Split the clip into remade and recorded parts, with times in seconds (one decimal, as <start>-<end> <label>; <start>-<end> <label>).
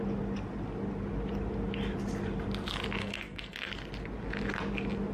0.0-3.0 recorded; 3.0-3.7 remade; 3.7-5.1 recorded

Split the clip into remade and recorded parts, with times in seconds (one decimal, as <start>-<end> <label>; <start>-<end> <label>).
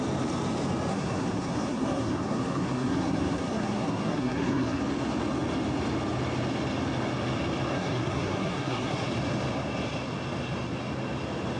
0.0-0.9 recorded; 0.9-4.8 remade; 4.8-7.7 recorded; 7.7-9.1 remade; 9.1-11.6 recorded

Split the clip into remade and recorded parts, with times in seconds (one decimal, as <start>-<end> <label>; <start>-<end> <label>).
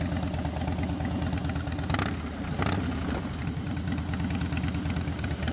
0.0-5.5 recorded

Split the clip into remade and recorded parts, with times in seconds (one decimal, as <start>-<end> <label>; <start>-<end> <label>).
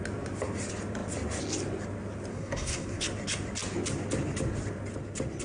0.0-2.3 recorded; 2.3-3.0 remade; 3.0-5.4 recorded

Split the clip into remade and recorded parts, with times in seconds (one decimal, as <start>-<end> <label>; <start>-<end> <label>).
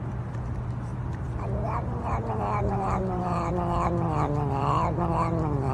0.0-0.9 recorded; 0.9-3.5 remade; 3.5-5.7 recorded